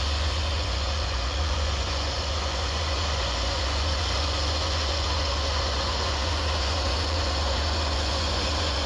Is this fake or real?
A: fake